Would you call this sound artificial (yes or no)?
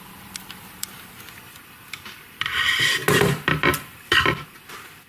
yes